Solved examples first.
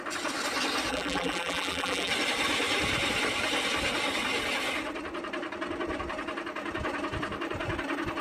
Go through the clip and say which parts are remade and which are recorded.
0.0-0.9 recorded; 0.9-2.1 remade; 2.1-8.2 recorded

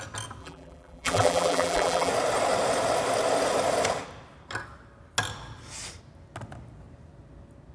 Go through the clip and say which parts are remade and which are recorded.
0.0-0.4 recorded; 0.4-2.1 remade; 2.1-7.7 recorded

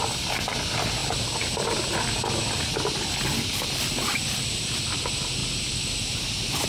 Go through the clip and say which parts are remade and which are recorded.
0.0-6.7 recorded

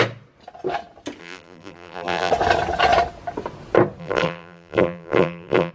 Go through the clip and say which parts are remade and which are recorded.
0.0-1.2 recorded; 1.2-2.3 remade; 2.3-4.0 recorded; 4.0-5.7 remade

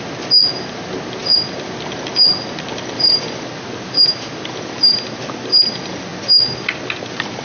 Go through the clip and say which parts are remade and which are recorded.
0.0-7.4 recorded

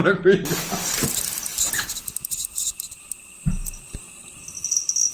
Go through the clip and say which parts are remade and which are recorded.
0.0-1.5 recorded; 1.5-3.5 remade; 3.5-5.1 recorded

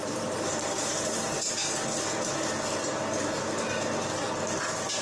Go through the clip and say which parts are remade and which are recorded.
0.0-1.6 remade; 1.6-4.6 recorded; 4.6-5.0 remade

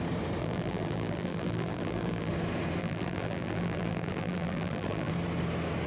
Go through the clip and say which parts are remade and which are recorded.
0.0-0.4 recorded; 0.4-2.3 remade; 2.3-2.8 recorded; 2.8-5.1 remade; 5.1-5.9 recorded